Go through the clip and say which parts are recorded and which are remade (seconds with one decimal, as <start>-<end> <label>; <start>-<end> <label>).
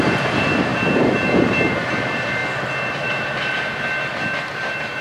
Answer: 0.0-2.4 remade; 2.4-2.9 recorded; 2.9-4.1 remade; 4.1-5.0 recorded